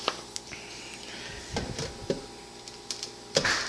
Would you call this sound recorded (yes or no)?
yes